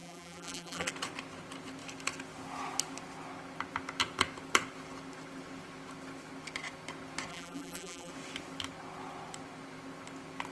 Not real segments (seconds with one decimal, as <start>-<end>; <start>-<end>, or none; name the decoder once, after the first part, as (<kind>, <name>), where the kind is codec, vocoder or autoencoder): 0.0-0.9 (vocoder, BigVGAN v2); 7.3-8.1